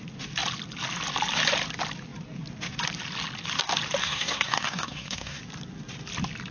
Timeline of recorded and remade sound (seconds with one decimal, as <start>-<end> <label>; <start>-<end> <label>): 0.0-4.0 recorded; 4.0-5.4 remade; 5.4-6.5 recorded